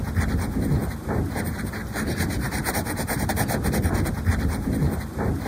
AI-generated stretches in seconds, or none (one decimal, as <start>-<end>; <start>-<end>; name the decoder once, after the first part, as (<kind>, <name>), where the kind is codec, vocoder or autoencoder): 0.8-3.3 (vocoder, BigVGAN v2); 4.3-5.5